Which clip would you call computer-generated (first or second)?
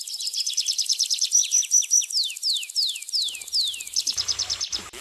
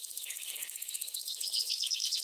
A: second